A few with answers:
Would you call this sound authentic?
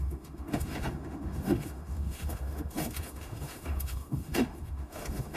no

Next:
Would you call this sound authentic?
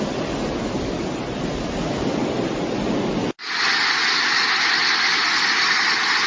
yes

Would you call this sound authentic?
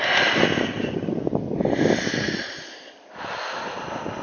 yes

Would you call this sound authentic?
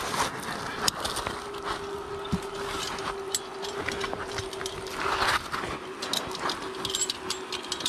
yes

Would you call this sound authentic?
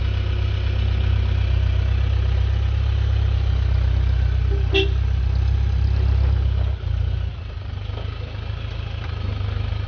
yes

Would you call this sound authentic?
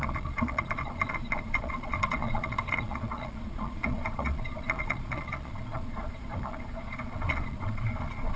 no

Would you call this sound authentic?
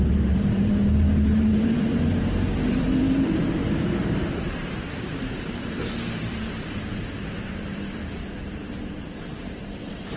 no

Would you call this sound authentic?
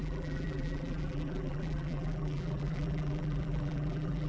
no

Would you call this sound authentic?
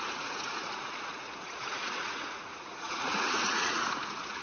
no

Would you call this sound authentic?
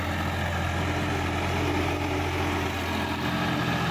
yes